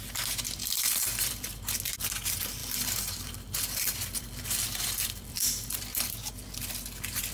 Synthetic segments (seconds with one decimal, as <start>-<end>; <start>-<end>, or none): 0.6-1.7; 2.6-6.1